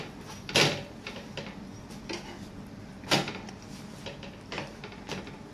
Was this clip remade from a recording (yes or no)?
no